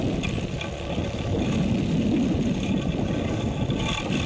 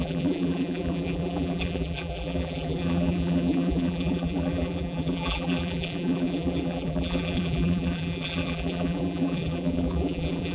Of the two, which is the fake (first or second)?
second